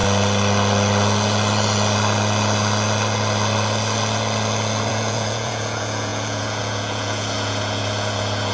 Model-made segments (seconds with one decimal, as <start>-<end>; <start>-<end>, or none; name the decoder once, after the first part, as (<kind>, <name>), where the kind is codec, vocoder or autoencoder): 4.9-8.5 (vocoder, Vocos)